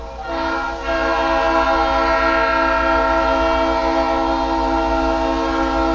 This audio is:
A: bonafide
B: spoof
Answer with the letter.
A